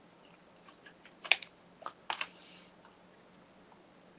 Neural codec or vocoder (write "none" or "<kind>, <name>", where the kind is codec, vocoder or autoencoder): none